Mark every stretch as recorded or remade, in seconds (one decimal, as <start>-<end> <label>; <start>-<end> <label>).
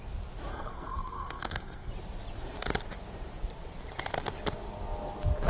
0.0-0.5 recorded; 0.5-1.9 remade; 1.9-5.5 recorded